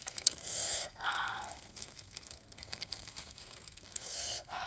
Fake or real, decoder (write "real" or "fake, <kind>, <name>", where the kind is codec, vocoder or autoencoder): fake, codec, SNAC